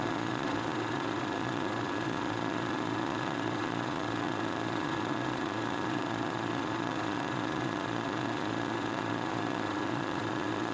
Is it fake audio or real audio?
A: fake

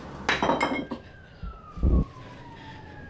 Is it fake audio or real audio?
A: real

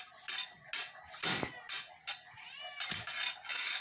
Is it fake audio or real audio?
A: real